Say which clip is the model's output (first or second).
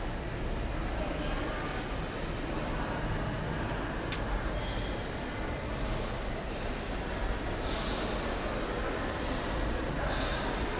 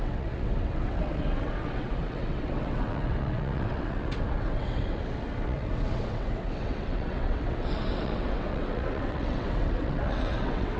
second